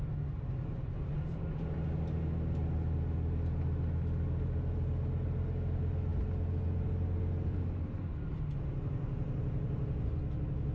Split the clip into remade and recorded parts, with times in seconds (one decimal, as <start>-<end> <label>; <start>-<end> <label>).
0.0-10.7 recorded